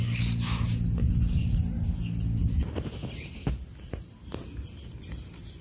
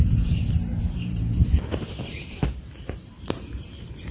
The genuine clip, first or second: first